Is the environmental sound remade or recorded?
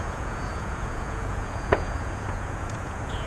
remade